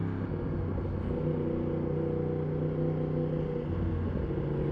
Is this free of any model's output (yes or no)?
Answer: yes